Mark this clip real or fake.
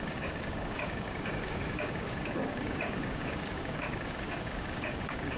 fake